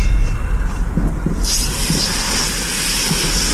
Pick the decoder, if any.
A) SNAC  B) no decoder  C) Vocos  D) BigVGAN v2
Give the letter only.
B